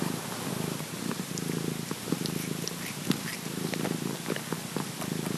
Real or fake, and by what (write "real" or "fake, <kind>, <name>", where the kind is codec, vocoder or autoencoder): real